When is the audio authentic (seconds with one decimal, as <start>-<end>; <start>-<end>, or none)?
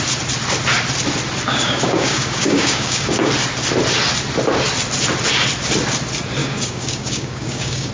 0.0-1.5; 3.3-6.4